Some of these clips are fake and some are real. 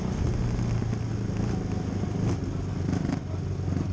real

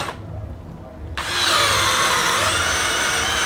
real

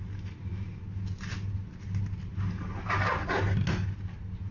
real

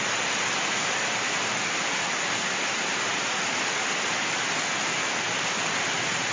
real